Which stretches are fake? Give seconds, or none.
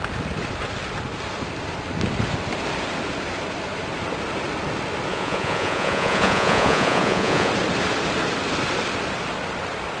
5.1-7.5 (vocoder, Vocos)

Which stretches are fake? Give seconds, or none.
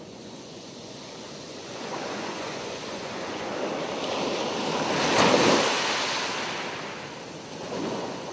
0.0-3.5 (vocoder, Vocos); 7.6-8.3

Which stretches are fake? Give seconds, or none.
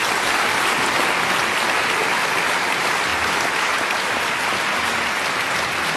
none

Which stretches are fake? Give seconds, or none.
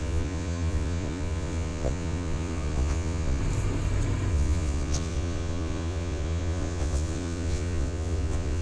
0.0-3.4 (vocoder, Vocos); 4.3-8.6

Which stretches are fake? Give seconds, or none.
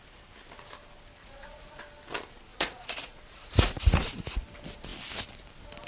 1.2-1.8 (vocoder, Vocos); 2.5-4.3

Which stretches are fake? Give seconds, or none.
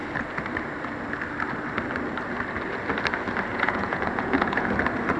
3.5-4.7 (vocoder, Vocos)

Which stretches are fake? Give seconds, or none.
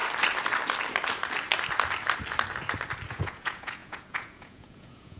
3.1-5.2 (vocoder, Vocos)